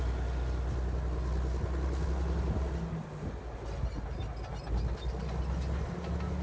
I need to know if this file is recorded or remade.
recorded